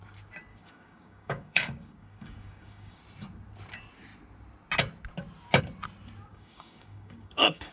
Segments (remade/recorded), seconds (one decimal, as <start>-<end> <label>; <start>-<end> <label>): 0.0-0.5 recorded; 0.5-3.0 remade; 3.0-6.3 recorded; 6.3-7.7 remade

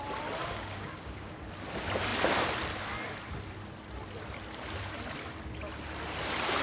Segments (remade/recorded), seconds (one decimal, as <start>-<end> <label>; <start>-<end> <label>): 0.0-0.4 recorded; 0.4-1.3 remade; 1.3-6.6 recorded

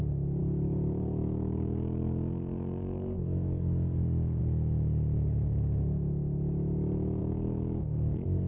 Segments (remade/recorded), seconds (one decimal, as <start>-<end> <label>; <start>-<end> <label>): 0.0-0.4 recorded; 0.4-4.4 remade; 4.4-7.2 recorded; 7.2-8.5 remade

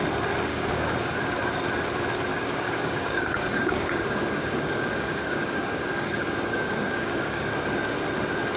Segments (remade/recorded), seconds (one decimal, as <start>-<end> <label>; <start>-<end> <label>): 0.0-0.5 recorded; 0.5-1.4 remade; 1.4-2.3 recorded; 2.3-7.5 remade; 7.5-8.6 recorded